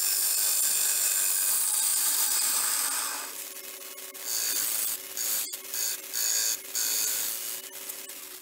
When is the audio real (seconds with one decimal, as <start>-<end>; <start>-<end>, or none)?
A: 0.0-1.9; 2.6-8.4